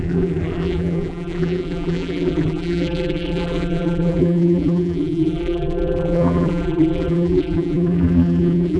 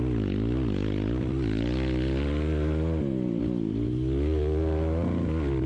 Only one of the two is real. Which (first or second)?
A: second